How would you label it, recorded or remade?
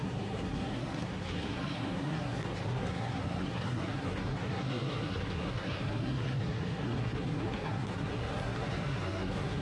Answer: remade